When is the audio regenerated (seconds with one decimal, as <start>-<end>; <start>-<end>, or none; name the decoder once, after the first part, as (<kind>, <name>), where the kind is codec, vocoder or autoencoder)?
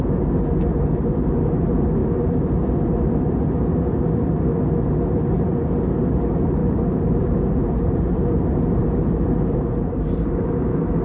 2.0-2.7 (vocoder, BigVGAN v2); 6.6-11.0